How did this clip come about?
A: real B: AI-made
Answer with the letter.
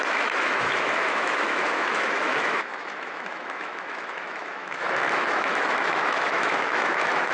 B